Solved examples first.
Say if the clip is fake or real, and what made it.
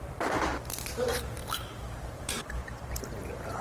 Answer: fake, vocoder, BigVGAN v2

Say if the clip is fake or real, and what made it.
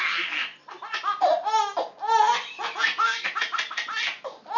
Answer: real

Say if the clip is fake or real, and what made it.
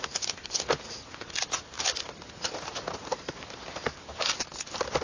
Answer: real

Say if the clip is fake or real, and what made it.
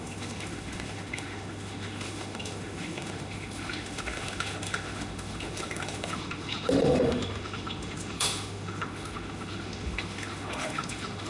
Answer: fake, autoencoder, DAC-VAE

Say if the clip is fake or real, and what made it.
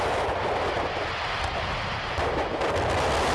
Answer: real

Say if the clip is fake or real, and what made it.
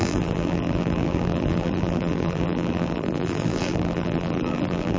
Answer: fake, vocoder, BigVGAN v2